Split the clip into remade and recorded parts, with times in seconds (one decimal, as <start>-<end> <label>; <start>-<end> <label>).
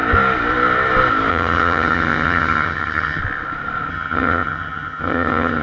0.0-1.3 recorded; 1.3-3.2 remade; 3.2-3.9 recorded; 3.9-5.6 remade